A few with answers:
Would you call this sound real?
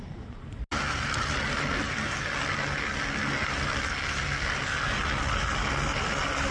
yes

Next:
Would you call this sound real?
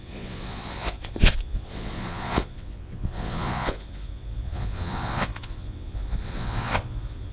no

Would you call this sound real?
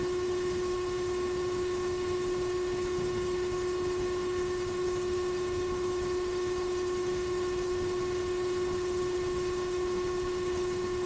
no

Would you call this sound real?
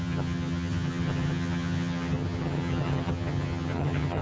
no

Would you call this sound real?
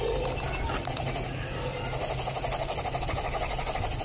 yes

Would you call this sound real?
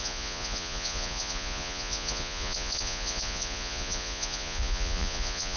no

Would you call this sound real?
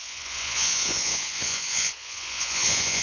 no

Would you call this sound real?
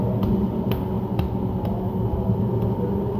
yes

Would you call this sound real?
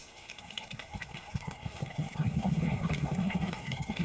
no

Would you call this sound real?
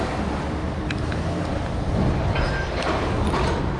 yes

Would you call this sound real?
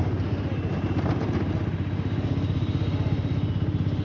yes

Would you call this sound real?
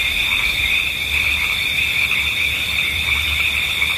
no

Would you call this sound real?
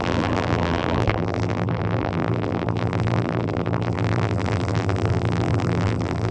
no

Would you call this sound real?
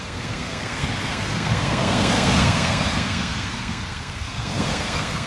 no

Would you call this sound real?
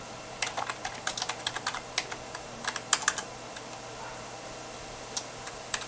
yes